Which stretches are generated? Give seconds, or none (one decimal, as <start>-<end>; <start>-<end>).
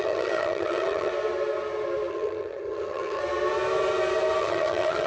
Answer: 0.0-1.1; 2.1-3.2; 4.4-5.1